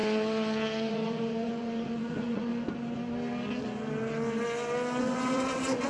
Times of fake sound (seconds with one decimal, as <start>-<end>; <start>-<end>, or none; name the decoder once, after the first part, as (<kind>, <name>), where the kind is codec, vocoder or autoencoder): 0.9-2.5 (vocoder, Vocos); 5.0-5.9